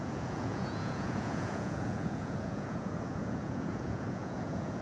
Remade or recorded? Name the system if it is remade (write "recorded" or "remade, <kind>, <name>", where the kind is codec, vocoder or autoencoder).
remade, vocoder, Vocos